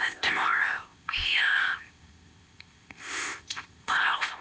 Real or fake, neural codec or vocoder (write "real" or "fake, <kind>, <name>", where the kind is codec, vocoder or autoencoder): fake, codec, ZipCodec